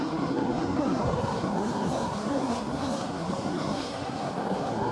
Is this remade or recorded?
remade